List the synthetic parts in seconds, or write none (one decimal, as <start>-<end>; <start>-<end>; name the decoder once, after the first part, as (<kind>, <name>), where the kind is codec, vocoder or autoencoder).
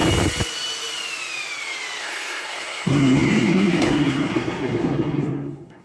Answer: 2.0-5.8 (codec, SNAC)